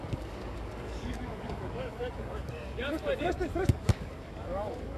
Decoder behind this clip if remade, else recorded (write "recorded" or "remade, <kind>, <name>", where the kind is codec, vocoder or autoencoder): remade, codec, DAC